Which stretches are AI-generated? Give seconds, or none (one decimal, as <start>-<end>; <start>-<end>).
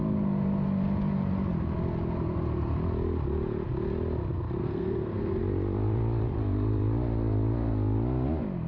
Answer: 4.6-5.4